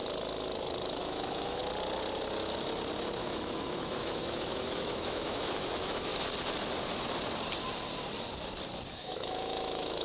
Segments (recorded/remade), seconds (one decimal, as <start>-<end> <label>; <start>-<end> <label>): 0.0-1.0 recorded; 1.0-1.6 remade; 1.6-3.2 recorded; 3.2-6.1 remade; 6.1-8.9 recorded; 8.9-10.0 remade